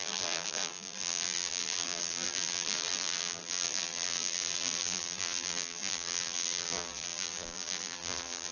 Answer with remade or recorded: remade